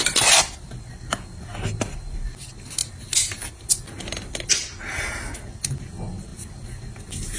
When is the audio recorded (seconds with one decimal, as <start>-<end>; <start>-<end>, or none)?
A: 0.0-7.4